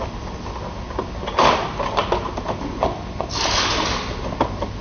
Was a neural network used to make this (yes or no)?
no